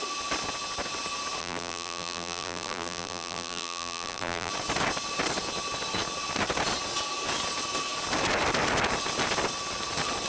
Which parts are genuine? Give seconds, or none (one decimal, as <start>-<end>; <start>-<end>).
0.0-1.4; 4.5-10.3